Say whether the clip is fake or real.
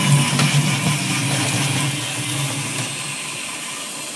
real